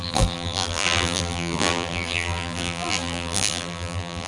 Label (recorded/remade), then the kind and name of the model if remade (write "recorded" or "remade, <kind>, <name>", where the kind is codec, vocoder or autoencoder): remade, vocoder, BigVGAN v2